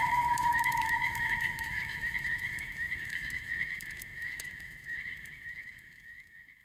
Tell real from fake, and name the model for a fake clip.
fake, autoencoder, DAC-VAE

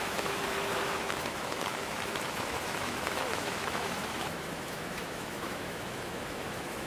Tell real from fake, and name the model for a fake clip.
fake, autoencoder, DAC-VAE